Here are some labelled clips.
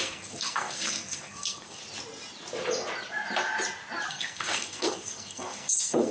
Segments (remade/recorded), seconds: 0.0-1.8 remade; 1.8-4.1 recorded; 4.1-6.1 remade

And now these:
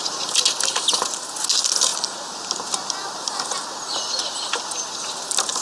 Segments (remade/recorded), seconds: 0.0-5.6 recorded

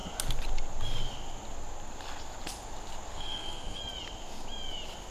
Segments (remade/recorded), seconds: 0.0-3.1 recorded; 3.1-3.8 remade; 3.8-5.1 recorded

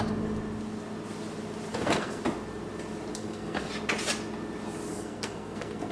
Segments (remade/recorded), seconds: 0.0-1.7 recorded; 1.7-2.2 remade; 2.2-3.1 recorded; 3.1-3.7 remade; 3.7-4.9 recorded; 4.9-5.9 remade

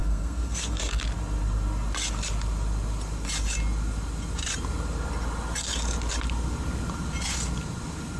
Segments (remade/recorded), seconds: 0.0-1.0 remade; 1.0-8.2 recorded

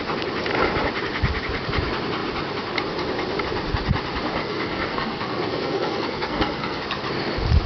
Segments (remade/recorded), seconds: 0.0-4.4 recorded; 4.4-6.8 remade; 6.8-7.7 recorded